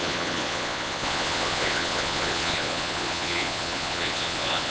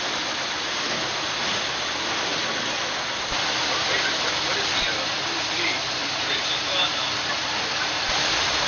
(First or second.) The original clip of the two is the second